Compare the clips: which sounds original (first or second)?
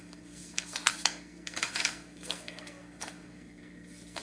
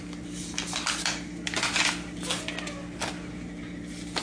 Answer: second